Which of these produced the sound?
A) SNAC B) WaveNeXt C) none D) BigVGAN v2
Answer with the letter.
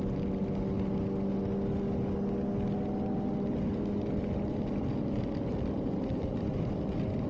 C